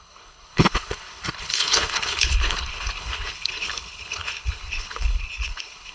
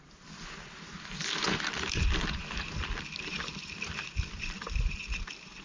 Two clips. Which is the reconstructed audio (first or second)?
first